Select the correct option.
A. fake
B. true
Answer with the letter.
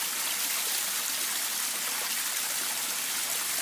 B